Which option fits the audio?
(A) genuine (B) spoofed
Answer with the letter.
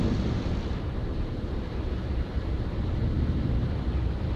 A